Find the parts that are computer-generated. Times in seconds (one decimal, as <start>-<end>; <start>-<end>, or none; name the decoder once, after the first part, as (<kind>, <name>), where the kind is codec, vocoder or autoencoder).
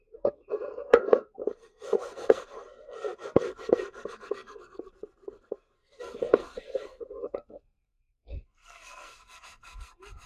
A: 0.0-10.3 (codec, SNAC)